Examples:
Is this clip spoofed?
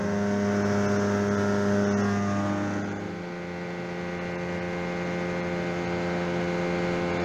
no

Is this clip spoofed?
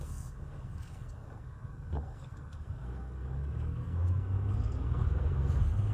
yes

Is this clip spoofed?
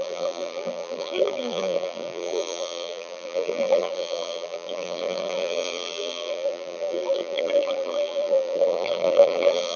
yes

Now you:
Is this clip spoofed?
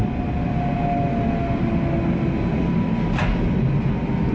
no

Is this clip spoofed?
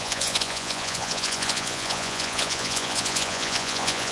yes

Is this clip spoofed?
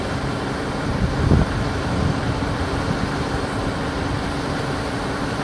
no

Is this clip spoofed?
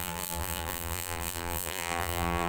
yes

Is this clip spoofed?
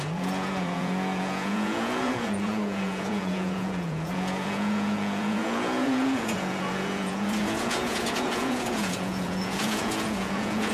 yes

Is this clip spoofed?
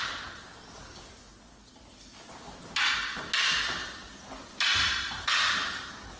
no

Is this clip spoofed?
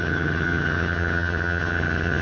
yes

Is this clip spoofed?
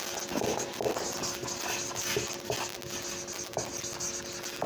no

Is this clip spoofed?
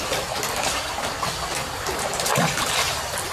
yes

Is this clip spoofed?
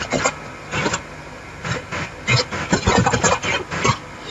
no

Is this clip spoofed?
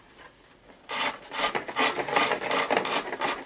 no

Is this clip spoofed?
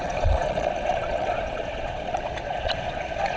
yes